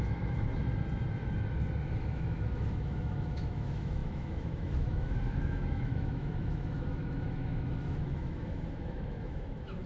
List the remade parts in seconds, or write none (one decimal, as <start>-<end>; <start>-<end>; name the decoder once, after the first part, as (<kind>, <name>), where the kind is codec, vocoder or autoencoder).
0.0-0.5 (autoencoder, DAC-VAE); 1.9-9.9